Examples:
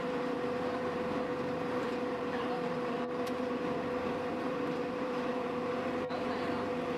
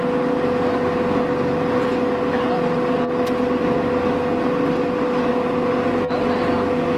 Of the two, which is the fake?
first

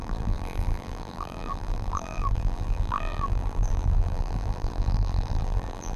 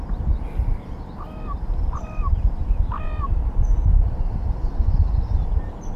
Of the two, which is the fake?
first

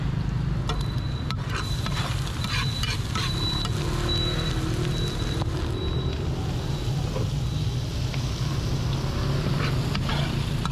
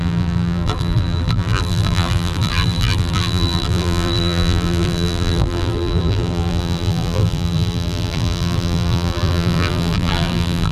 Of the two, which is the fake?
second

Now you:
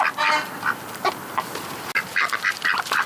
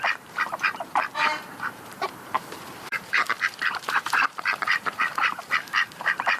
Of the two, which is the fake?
second